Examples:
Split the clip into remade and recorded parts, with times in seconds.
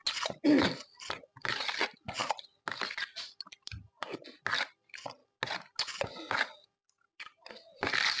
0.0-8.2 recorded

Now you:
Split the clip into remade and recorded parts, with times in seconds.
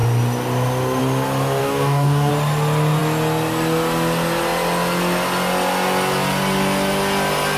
0.0-1.6 recorded; 1.6-2.3 remade; 2.3-7.6 recorded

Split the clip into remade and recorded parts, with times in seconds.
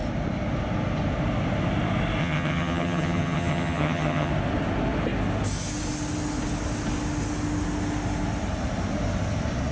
0.0-2.2 recorded; 2.2-4.3 remade; 4.3-9.7 recorded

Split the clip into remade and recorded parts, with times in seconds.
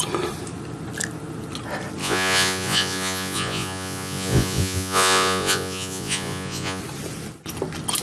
0.0-2.0 recorded; 2.0-6.8 remade; 6.8-8.0 recorded